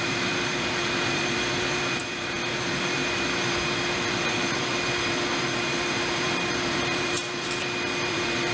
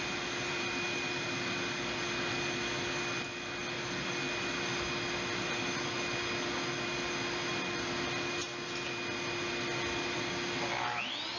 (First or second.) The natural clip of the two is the second